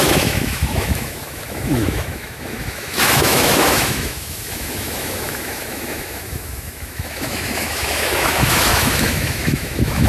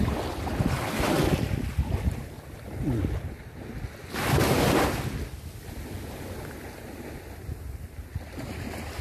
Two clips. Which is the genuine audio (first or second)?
second